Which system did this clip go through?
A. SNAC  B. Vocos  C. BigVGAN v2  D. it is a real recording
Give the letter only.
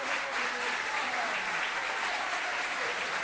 C